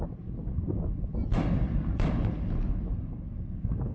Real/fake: real